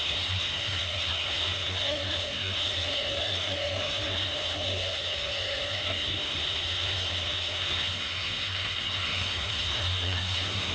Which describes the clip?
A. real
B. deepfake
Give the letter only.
B